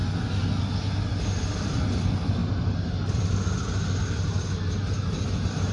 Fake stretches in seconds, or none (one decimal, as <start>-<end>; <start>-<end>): none